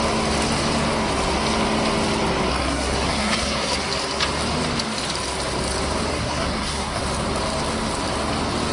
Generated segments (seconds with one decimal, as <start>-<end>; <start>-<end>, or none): 2.5-3.8; 6.1-7.0